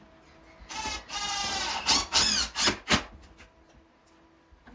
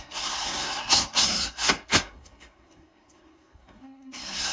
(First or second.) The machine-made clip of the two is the second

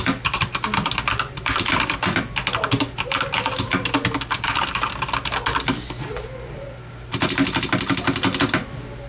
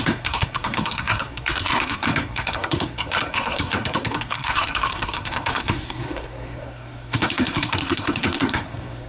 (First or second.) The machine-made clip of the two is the second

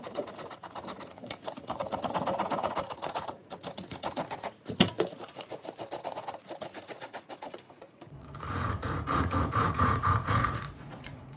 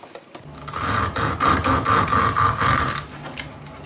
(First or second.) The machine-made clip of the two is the first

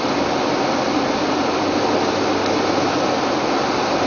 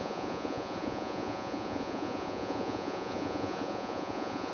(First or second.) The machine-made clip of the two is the second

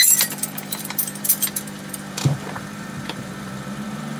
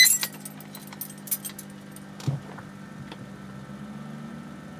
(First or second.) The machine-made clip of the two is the first